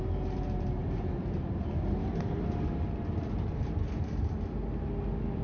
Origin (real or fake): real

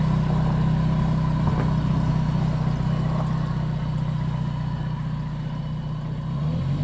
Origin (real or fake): real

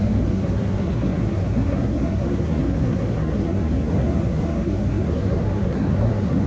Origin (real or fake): fake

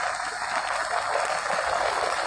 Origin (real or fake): real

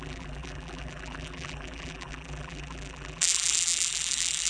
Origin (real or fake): fake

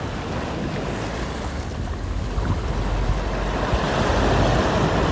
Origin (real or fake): real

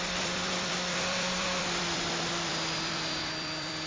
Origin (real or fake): fake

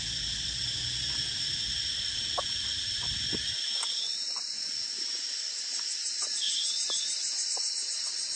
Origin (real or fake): real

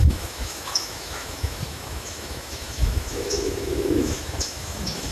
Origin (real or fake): fake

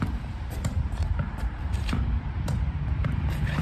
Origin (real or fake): fake